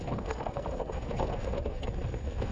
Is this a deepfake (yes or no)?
yes